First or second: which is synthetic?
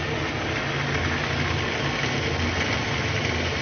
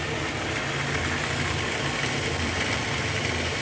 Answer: second